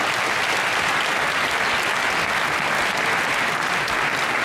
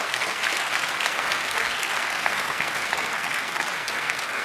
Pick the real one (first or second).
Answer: first